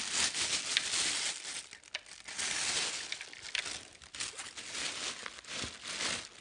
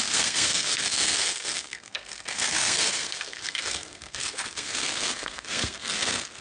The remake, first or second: second